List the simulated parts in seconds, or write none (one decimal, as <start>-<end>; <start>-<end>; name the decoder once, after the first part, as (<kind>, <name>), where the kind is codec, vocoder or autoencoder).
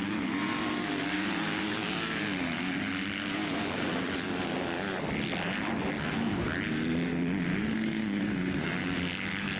7.6-8.7 (codec, SNAC)